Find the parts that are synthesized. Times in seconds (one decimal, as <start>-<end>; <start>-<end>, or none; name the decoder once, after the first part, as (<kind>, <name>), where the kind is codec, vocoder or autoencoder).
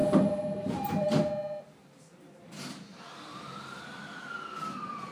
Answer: 0.0-0.9 (vocoder, BigVGAN v2); 2.9-3.9